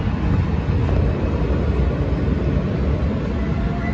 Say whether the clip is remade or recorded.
recorded